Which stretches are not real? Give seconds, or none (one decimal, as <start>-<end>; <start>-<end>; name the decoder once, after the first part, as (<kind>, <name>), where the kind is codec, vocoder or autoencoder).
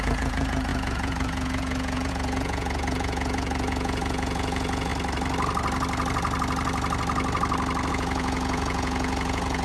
0.0-4.9 (vocoder, Vocos); 7.9-9.6